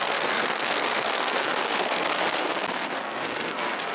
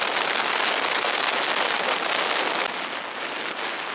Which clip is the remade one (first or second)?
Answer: first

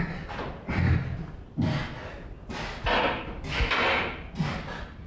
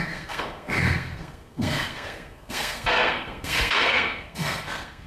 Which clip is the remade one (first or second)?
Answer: second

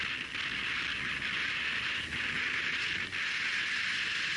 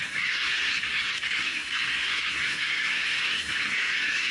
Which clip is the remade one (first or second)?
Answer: second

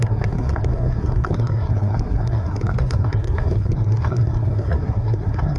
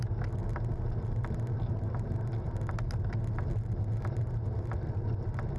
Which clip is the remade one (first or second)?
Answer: first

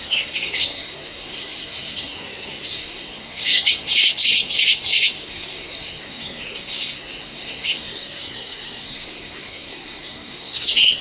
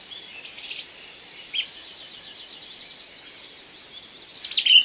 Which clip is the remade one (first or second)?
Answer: first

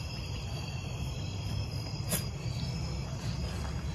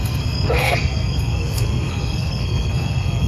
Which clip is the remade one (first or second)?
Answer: second